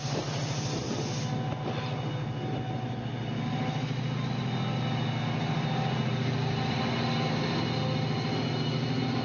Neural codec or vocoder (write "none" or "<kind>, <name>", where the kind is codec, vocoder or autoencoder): none